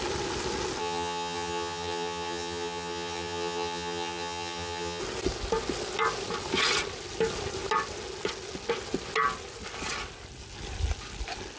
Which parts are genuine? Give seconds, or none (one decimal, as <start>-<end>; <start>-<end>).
0.0-0.8; 5.0-11.6